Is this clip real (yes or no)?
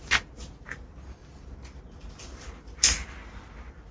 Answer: yes